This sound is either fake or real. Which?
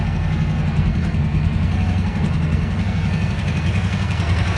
fake